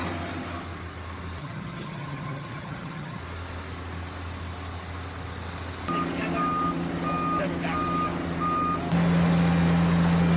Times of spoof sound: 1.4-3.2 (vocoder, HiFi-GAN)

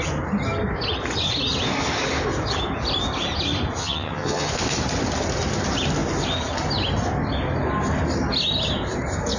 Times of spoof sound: 3.8-4.5 (vocoder, HiFi-GAN)

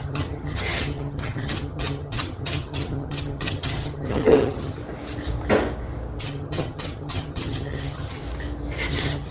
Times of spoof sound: 0.0-4.8 (vocoder, HiFi-GAN); 6.2-8.2; 8.9-9.3

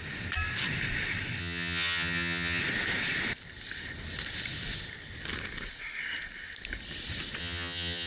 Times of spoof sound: 1.4-2.6 (vocoder, HiFi-GAN); 7.4-8.1

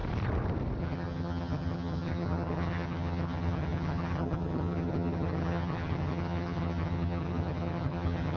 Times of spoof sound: 0.8-8.4 (vocoder, HiFi-GAN)